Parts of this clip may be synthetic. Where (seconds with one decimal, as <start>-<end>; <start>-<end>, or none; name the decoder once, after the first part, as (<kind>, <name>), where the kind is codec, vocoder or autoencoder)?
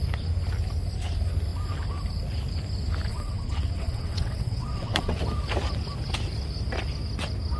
3.1-5.2 (vocoder, WaveNeXt)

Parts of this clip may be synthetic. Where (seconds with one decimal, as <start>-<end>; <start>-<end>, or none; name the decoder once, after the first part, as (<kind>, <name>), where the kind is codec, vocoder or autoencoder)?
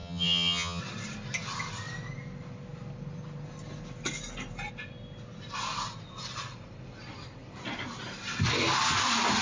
0.0-0.8 (vocoder, HiFi-GAN)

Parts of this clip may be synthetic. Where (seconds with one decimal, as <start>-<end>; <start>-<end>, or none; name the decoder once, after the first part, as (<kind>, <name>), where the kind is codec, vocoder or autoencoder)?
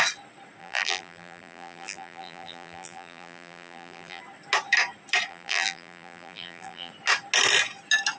0.6-4.2 (vocoder, BigVGAN v2); 5.3-6.9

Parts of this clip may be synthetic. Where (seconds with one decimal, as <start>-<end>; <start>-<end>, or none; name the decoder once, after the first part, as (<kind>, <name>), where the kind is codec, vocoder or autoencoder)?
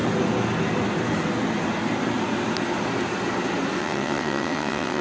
3.8-5.0 (vocoder, WaveNeXt)